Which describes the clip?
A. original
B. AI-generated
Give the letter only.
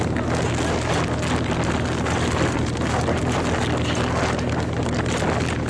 A